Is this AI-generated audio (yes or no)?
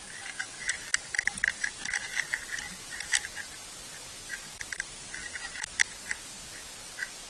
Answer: no